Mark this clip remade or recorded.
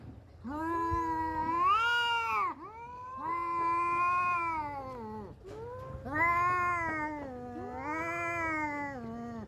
recorded